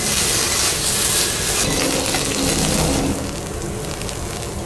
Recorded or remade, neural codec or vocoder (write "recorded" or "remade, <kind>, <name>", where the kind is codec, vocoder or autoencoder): recorded